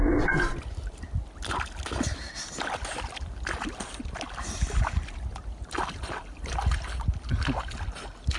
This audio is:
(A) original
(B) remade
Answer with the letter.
A